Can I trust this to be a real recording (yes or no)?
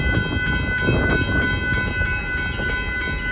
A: yes